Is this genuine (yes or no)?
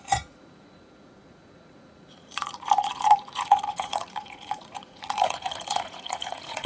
no